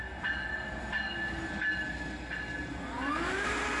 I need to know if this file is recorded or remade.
recorded